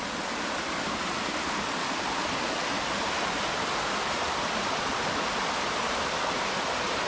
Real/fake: real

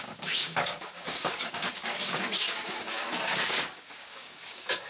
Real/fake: fake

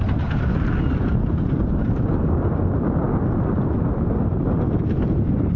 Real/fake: real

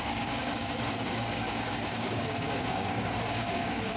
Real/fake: fake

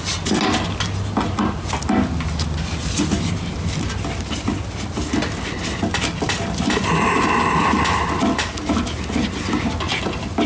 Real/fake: real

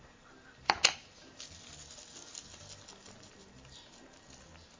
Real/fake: real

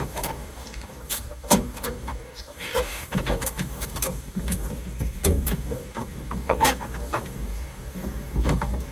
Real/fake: fake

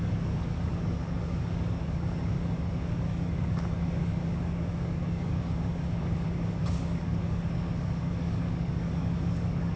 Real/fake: fake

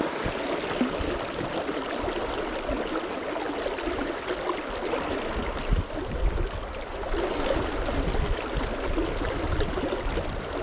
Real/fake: real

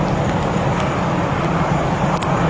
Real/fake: real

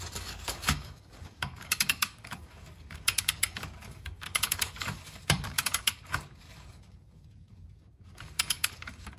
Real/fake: fake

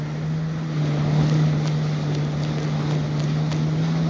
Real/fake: real